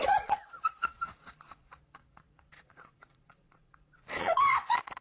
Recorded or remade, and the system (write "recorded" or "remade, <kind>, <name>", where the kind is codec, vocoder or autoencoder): remade, vocoder, Vocos